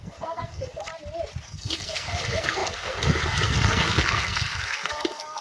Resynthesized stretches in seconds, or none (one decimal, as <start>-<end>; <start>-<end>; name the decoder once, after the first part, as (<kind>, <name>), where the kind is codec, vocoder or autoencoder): 0.0-0.9 (codec, SNAC); 1.4-5.4